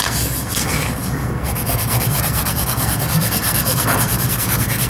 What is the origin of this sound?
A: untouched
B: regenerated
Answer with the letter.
B